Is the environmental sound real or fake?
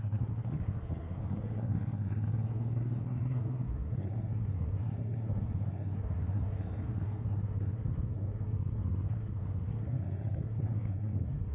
fake